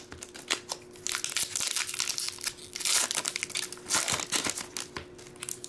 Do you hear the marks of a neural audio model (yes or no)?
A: no